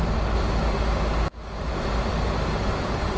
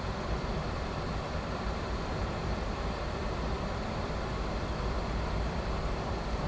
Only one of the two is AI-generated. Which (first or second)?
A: second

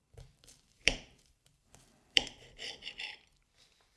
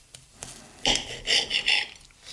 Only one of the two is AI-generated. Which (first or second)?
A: first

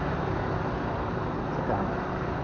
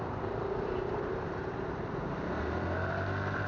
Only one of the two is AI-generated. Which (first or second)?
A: second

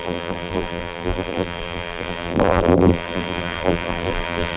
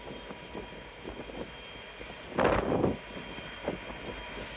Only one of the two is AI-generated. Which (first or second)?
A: first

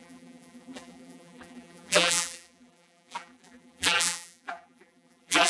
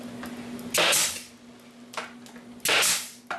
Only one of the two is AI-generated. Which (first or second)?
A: first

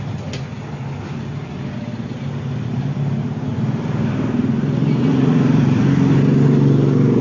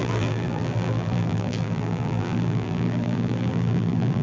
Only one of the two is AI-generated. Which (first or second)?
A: second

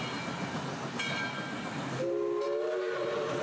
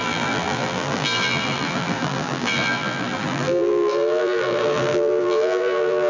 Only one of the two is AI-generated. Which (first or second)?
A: second